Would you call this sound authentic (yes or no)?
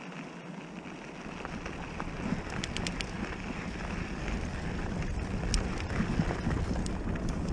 yes